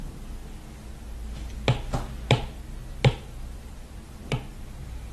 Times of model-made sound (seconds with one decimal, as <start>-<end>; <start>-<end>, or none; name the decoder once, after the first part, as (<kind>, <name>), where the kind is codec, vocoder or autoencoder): 0.0-0.4 (vocoder, BigVGAN v2); 3.5-5.1